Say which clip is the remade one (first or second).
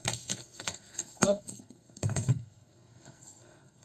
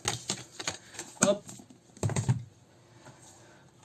first